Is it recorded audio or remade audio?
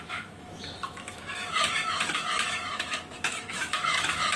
remade